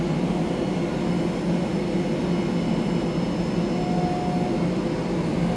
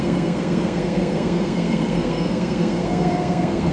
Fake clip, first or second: second